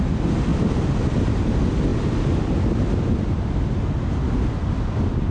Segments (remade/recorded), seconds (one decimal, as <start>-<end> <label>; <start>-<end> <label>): 0.0-5.3 recorded